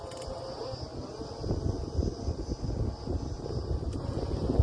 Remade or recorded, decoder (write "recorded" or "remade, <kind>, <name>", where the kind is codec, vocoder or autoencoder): recorded